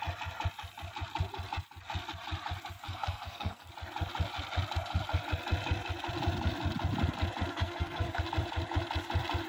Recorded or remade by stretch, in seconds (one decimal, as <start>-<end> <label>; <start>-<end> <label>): 0.0-2.9 recorded; 2.9-3.7 remade; 3.7-7.5 recorded; 7.5-8.2 remade; 8.2-9.5 recorded